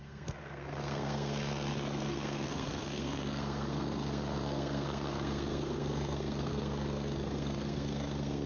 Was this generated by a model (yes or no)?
yes